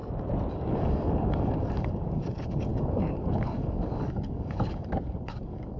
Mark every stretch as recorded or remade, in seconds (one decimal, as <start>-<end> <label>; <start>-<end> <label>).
0.0-0.5 recorded; 0.5-5.8 remade